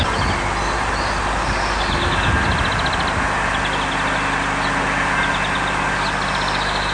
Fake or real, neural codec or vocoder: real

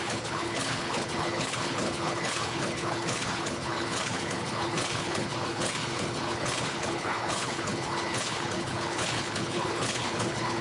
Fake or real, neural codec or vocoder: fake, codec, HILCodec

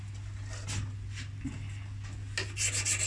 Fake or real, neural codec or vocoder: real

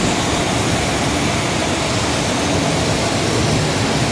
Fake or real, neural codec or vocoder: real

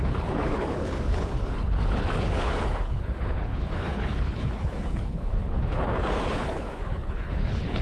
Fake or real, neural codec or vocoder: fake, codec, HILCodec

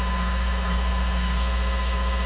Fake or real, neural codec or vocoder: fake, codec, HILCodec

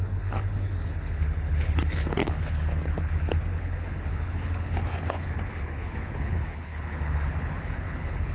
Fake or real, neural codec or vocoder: fake, codec, HILCodec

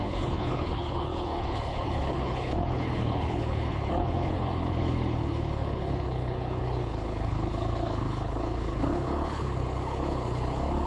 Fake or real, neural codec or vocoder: fake, codec, HILCodec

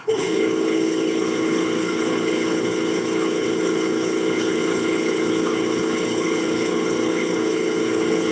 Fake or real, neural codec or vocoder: fake, codec, HILCodec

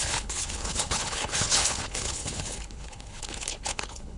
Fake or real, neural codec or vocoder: fake, codec, HILCodec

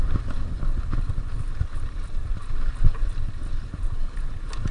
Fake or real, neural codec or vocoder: real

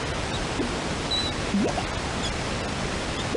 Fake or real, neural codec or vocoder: real